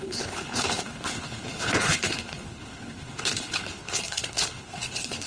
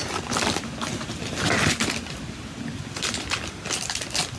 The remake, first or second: first